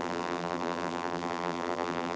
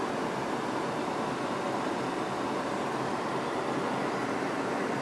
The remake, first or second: first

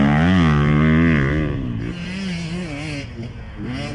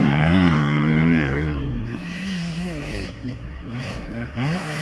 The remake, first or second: second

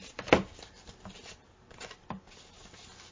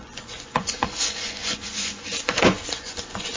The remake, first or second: second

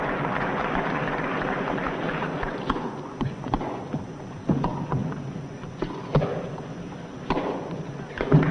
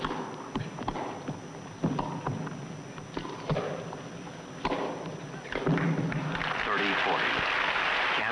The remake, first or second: first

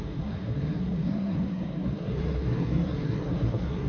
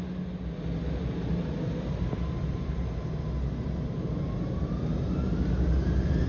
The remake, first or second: first